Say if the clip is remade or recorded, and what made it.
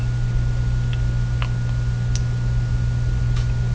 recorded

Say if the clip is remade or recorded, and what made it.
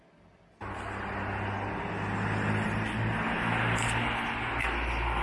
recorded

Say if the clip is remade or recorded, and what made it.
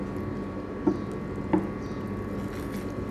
recorded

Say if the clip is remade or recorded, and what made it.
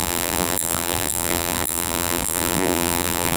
remade, vocoder, BigVGAN v2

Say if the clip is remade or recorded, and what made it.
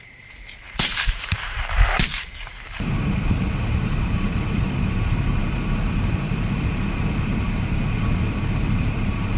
remade, vocoder, BigVGAN v2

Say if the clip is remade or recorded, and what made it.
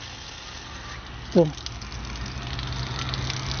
recorded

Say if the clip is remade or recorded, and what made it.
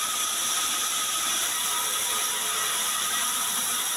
remade, vocoder, BigVGAN v2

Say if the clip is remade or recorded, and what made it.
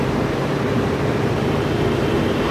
remade, vocoder, BigVGAN v2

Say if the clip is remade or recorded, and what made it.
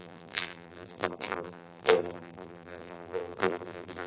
remade, vocoder, BigVGAN v2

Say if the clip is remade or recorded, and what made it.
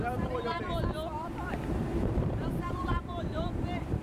remade, vocoder, BigVGAN v2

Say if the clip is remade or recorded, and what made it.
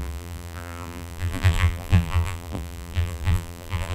remade, vocoder, BigVGAN v2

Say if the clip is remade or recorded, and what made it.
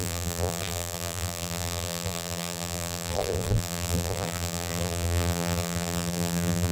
remade, vocoder, BigVGAN v2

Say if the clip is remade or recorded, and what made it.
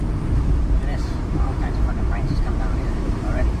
remade, vocoder, BigVGAN v2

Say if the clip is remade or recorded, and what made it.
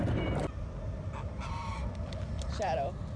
recorded